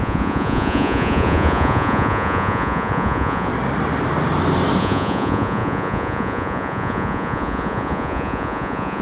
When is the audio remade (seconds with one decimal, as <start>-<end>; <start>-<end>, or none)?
0.0-3.5; 4.8-9.0